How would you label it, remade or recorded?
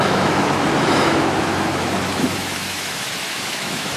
remade